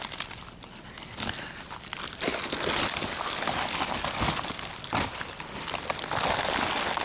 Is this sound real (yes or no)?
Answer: yes